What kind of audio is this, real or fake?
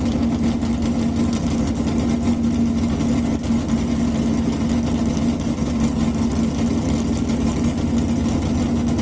real